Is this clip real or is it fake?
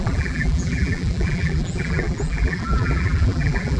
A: fake